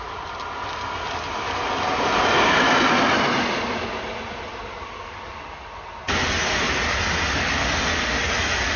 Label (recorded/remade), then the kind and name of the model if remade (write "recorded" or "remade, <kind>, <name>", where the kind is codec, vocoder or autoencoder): recorded